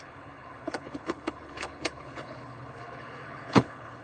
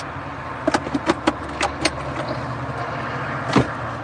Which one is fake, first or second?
first